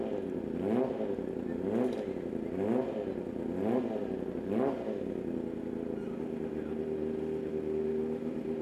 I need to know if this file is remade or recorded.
recorded